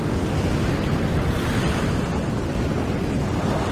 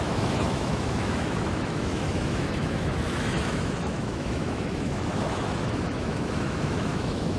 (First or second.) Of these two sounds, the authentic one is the first